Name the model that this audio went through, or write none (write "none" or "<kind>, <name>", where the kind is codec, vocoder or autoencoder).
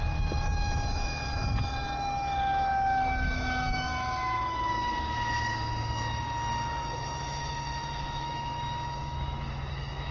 autoencoder, DAC-VAE